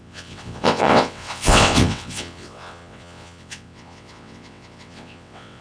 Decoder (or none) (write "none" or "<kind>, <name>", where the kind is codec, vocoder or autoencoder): vocoder, WaveNeXt